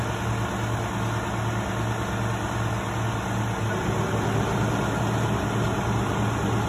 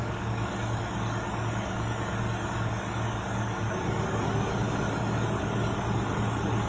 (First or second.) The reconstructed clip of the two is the second